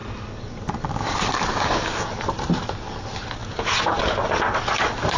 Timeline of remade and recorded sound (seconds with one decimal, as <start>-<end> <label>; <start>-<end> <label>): 0.0-3.4 recorded; 3.4-4.0 remade; 4.0-5.2 recorded